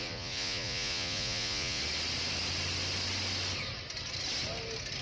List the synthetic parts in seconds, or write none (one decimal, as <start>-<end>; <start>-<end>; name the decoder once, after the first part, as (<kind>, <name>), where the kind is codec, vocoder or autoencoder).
0.0-1.8 (vocoder, Vocos)

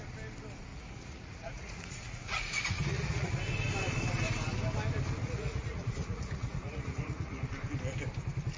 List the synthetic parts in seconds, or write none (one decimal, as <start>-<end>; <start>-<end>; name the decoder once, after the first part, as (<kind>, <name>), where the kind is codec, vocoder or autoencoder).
0.7-3.3 (vocoder, Vocos); 5.2-7.5

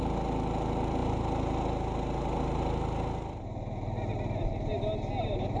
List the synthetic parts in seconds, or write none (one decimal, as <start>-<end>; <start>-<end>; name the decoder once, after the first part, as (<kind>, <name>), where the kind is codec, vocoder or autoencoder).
none

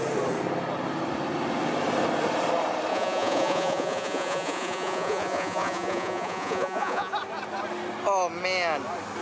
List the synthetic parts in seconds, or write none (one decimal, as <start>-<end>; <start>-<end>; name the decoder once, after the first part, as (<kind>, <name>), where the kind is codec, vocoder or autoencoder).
2.9-7.1 (vocoder, Vocos)

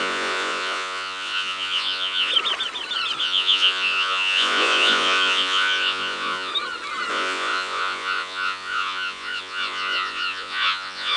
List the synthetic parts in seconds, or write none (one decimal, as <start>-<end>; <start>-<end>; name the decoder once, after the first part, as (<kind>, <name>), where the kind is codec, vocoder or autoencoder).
0.0-2.3 (vocoder, Vocos); 3.2-6.5; 7.1-11.2

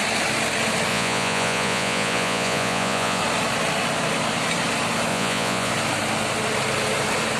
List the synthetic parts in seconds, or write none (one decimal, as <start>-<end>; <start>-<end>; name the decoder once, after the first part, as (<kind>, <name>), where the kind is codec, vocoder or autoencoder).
0.9-3.2 (vocoder, Vocos); 5.1-5.7

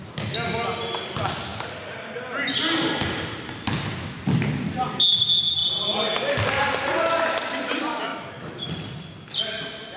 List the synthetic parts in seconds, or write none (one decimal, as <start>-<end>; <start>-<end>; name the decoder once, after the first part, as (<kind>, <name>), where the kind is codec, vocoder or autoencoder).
none